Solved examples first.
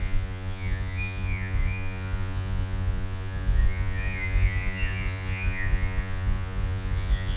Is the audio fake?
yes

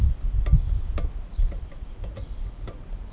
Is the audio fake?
no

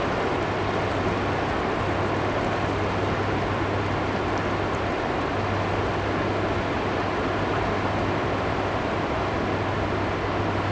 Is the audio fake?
no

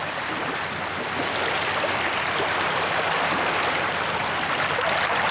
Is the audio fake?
no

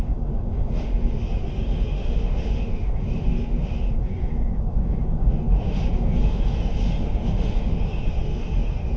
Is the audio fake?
yes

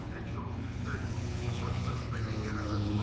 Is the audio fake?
yes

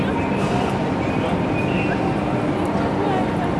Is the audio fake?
no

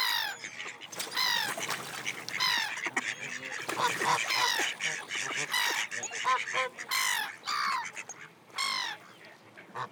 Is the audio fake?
no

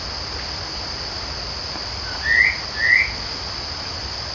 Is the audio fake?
no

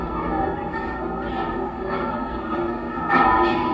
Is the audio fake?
yes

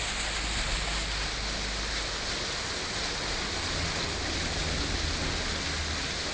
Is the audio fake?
no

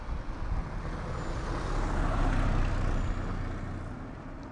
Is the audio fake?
no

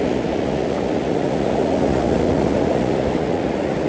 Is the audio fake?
yes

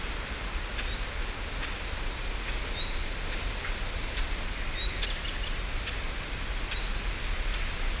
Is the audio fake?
no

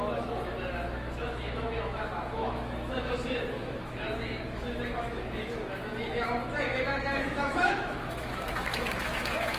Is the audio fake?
yes